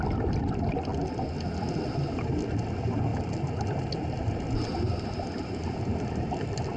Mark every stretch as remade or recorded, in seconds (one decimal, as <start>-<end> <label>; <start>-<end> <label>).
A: 0.0-6.8 recorded